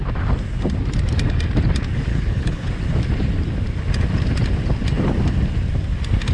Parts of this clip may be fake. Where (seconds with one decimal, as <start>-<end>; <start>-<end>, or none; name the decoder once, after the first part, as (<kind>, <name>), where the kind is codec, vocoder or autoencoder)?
2.1-2.7 (codec, HILCodec)